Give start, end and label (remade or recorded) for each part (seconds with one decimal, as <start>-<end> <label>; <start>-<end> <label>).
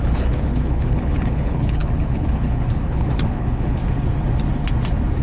0.0-3.8 remade; 3.8-5.2 recorded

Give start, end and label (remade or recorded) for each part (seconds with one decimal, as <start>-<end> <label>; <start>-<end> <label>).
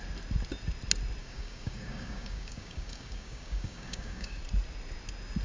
0.0-1.2 recorded; 1.2-4.4 remade; 4.4-5.4 recorded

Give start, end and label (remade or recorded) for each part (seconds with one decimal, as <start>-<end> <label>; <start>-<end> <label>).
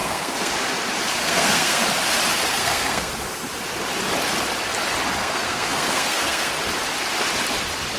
0.0-0.5 remade; 0.5-1.2 recorded; 1.2-1.8 remade; 1.8-2.5 recorded; 2.5-3.1 remade; 3.1-5.2 recorded; 5.2-6.5 remade; 6.5-8.0 recorded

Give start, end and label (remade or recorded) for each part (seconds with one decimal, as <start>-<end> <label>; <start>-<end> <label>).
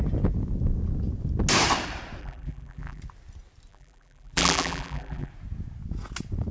0.0-2.2 recorded; 2.2-3.0 remade; 3.0-3.7 recorded; 3.7-5.3 remade; 5.3-6.5 recorded